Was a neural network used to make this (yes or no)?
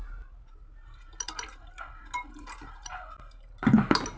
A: no